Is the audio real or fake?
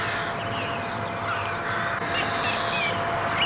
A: real